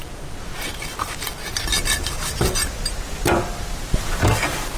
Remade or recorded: recorded